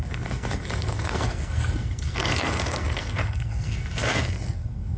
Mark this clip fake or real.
fake